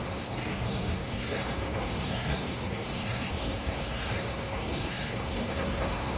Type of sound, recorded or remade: remade